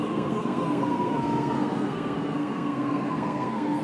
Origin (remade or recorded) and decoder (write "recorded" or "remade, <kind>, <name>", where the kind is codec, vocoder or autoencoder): remade, codec, SNAC